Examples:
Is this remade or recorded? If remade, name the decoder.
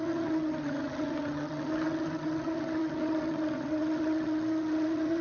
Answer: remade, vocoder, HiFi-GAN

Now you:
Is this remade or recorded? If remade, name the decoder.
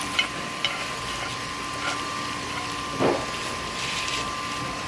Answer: recorded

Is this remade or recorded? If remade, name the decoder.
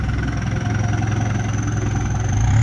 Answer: recorded